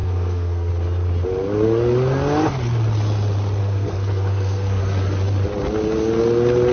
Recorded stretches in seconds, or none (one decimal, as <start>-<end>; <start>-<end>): 0.7-3.6; 4.8-6.7